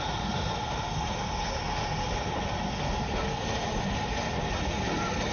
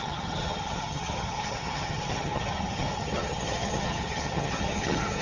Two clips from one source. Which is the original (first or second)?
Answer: first